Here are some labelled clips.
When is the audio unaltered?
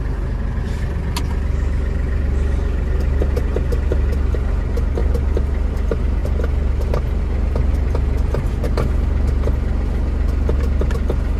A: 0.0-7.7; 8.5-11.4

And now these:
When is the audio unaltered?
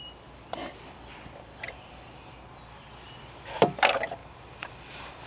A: 0.0-4.2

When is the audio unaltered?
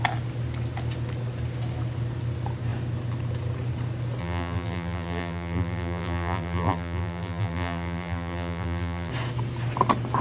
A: 0.0-4.2; 9.1-10.2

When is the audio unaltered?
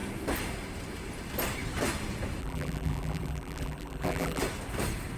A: 0.0-2.4; 4.4-5.2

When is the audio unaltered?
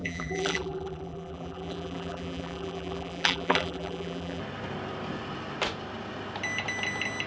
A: 4.4-7.3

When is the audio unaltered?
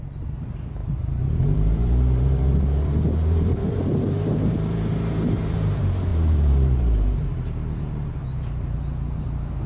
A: none